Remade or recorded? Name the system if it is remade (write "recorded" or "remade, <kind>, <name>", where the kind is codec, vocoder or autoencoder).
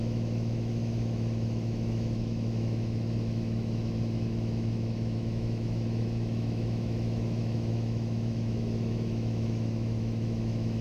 remade, autoencoder, DAC-VAE